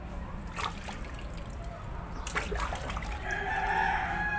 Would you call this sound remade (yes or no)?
no